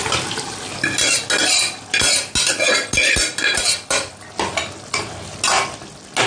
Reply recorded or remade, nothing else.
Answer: recorded